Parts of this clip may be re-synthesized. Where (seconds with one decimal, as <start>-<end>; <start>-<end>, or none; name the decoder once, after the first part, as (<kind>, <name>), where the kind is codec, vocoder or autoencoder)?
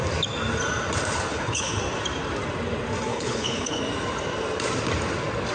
1.3-1.8 (codec, HILCodec); 3.1-3.8